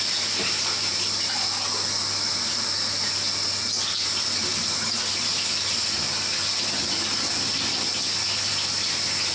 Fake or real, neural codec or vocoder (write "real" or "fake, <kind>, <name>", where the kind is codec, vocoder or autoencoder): real